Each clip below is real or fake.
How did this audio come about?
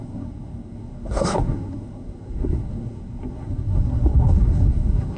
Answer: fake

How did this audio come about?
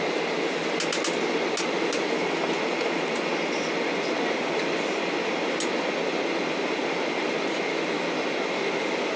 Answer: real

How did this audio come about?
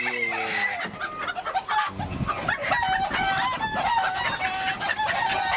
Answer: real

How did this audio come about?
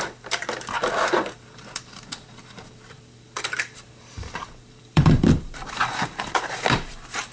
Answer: fake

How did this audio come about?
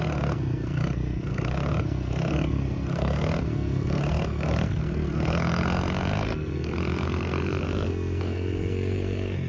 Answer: fake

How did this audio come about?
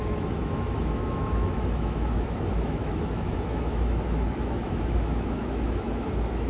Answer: fake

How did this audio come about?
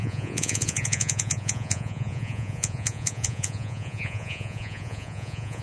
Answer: fake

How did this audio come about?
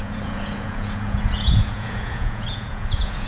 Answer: fake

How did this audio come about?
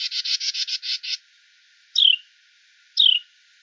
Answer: real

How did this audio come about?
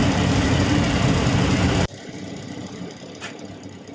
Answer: fake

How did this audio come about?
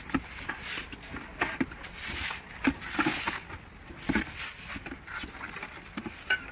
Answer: real